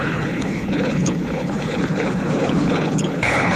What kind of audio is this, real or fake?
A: fake